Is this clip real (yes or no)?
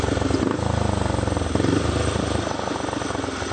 yes